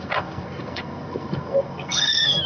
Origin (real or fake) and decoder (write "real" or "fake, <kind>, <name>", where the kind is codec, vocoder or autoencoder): fake, codec, SNAC